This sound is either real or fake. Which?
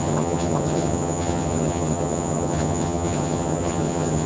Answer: fake